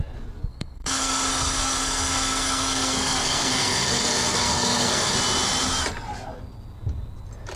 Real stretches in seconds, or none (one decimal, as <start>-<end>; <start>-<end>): 0.0-0.5; 5.1-7.6